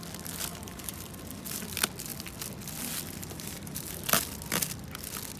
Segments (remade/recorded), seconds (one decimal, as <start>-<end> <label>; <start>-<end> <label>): 0.0-0.5 recorded; 0.5-1.2 remade; 1.2-3.2 recorded; 3.2-4.0 remade; 4.0-5.4 recorded